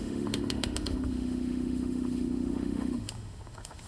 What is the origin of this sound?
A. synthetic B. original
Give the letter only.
A